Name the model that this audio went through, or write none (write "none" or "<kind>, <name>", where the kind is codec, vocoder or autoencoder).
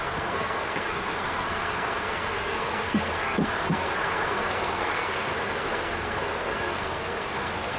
codec, SNAC